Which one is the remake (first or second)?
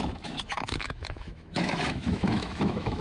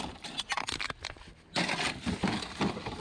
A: first